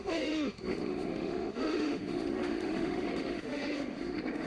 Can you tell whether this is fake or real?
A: fake